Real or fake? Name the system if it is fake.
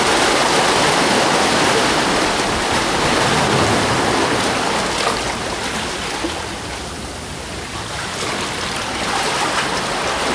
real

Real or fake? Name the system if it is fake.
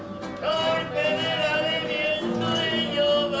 real